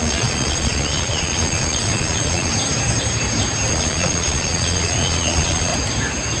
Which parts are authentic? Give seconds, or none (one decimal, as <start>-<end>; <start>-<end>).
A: 2.5-3.7; 5.7-6.4